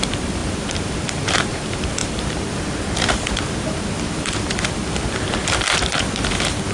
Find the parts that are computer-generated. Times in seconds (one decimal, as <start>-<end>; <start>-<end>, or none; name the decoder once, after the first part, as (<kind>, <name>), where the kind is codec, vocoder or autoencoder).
0.0-6.7 (vocoder, BigVGAN v2)